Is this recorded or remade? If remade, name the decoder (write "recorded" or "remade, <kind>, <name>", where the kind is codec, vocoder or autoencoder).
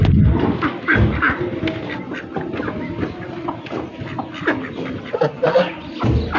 recorded